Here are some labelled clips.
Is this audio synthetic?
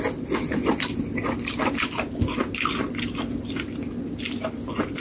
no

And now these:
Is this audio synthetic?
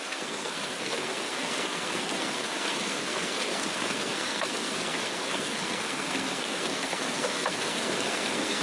yes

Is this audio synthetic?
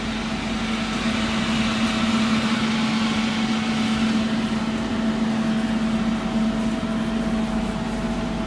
no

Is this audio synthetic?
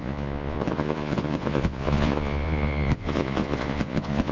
yes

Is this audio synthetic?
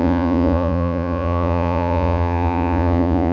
yes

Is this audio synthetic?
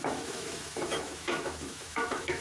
yes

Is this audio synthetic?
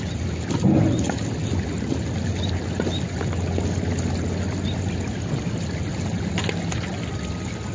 no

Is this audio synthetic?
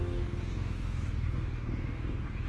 yes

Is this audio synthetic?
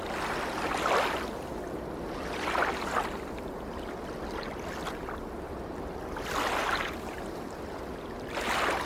no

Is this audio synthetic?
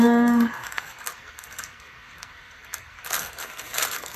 yes